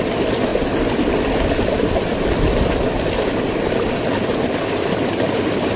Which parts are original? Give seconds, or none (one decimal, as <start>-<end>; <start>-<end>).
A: 0.0-5.8